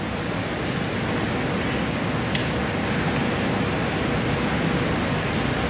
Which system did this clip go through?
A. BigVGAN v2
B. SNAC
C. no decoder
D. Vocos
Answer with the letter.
C